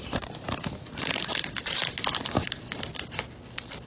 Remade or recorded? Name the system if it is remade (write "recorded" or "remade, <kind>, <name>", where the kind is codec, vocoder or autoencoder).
recorded